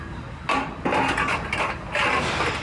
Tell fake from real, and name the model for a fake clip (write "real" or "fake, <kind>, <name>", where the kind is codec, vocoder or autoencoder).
real